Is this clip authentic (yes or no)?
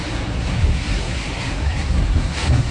no